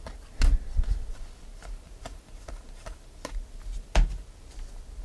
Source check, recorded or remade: recorded